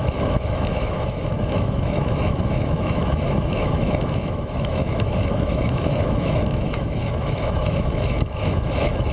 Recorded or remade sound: remade